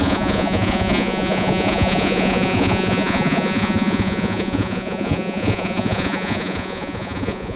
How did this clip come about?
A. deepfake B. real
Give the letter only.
A